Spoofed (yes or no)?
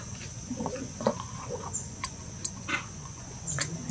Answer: yes